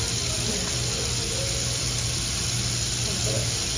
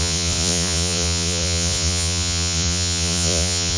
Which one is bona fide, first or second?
first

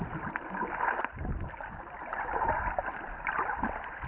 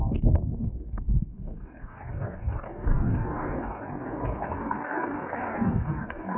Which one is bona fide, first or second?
first